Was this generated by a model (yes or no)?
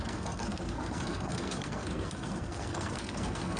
yes